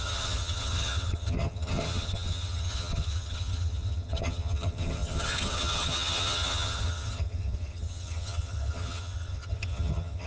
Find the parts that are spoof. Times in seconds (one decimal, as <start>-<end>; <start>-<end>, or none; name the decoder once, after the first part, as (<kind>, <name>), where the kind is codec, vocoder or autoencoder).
0.0-10.3 (vocoder, HiFi-GAN)